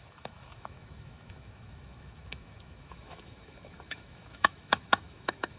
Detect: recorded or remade remade